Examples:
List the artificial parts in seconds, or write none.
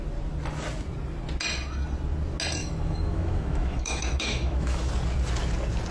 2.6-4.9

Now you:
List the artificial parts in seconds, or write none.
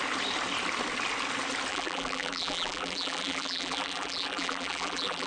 1.7-5.3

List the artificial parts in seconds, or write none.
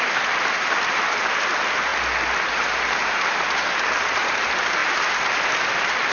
0.0-1.9; 2.5-4.8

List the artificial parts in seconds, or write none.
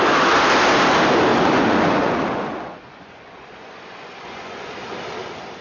1.3-4.7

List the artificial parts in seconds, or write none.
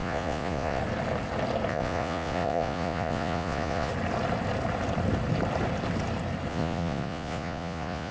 0.0-0.8; 1.7-3.9; 6.5-8.1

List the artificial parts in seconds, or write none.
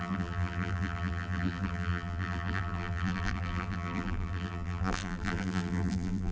0.0-6.3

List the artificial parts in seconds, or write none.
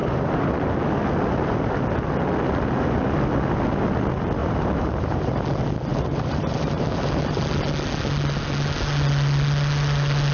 0.0-0.5; 4.4-5.3; 5.9-7.4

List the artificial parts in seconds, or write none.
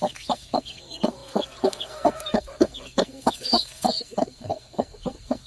0.0-5.5